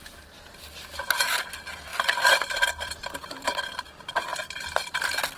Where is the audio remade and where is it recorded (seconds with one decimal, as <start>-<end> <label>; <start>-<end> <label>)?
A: 0.0-1.9 recorded; 1.9-3.6 remade; 3.6-5.4 recorded